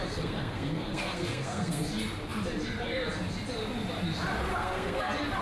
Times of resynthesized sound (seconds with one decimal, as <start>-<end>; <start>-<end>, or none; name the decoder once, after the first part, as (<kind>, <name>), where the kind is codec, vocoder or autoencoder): 0.0-1.8 (codec, SNAC); 4.5-5.0